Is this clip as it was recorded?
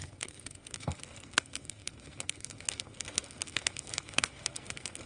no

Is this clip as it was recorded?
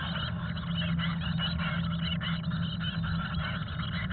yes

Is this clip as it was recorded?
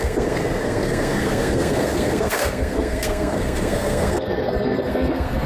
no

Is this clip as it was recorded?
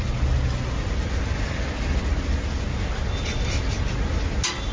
yes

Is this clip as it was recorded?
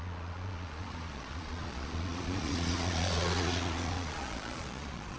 no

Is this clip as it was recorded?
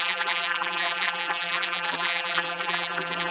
no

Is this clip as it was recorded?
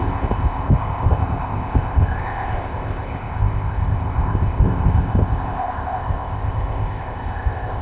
no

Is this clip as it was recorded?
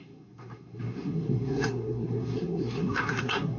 no